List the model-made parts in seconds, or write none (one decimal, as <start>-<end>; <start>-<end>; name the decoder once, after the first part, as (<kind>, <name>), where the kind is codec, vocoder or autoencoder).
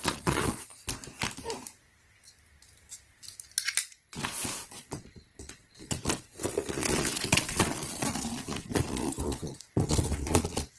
0.0-0.7 (vocoder, Vocos); 3.9-10.8